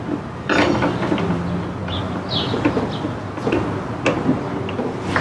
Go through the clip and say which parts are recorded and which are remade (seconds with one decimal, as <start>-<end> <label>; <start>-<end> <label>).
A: 0.0-5.2 recorded